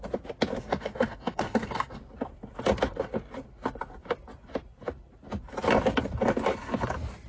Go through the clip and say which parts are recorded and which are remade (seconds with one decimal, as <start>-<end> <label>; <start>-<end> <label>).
0.0-0.6 recorded; 0.6-2.0 remade; 2.0-7.3 recorded